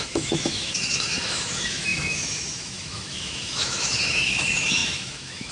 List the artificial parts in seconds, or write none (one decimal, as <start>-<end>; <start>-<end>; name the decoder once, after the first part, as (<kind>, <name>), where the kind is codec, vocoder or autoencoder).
0.0-5.5 (autoencoder, DAC-VAE)